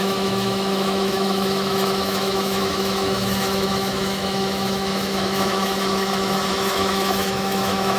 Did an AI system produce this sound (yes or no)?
yes